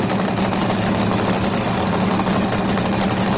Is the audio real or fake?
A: real